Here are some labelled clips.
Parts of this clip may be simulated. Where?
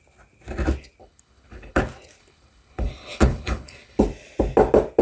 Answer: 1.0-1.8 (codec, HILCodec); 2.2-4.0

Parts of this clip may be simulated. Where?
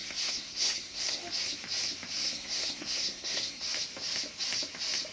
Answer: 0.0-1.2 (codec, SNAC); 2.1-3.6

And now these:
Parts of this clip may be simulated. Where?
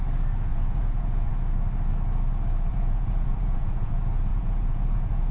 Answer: 0.5-1.3 (vocoder, Vocos); 2.7-3.9; 4.3-5.3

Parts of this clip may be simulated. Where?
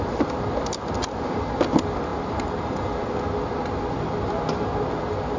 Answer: none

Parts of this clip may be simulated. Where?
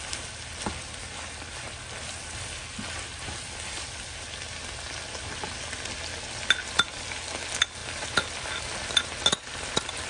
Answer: none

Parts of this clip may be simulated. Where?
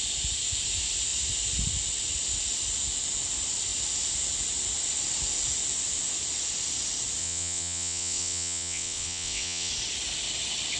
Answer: 7.2-9.7 (vocoder, WaveNeXt)